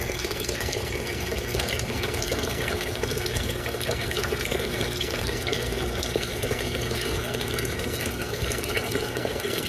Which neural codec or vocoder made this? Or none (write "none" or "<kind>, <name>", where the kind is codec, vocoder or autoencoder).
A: codec, SNAC